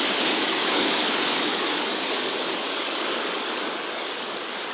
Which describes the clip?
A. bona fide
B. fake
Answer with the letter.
B